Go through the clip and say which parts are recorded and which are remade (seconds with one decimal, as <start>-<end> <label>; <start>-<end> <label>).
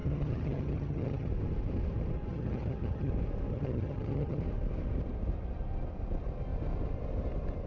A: 0.0-1.3 remade; 1.3-2.3 recorded; 2.3-3.1 remade; 3.1-3.5 recorded; 3.5-4.4 remade; 4.4-7.7 recorded